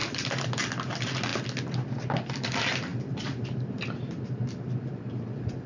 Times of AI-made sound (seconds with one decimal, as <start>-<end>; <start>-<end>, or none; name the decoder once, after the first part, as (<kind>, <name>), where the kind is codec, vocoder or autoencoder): none